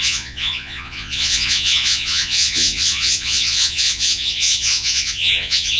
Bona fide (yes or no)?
no